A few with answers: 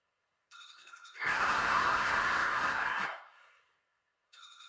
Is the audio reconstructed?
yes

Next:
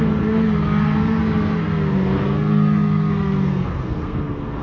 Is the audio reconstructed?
yes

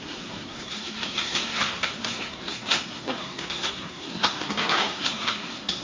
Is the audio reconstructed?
yes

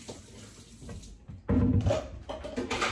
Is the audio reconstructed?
no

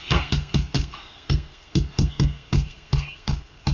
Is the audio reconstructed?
yes